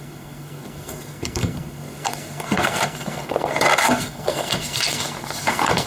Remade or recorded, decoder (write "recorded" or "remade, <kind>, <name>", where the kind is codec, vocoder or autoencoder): remade, codec, SNAC